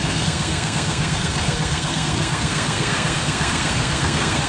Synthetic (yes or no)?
yes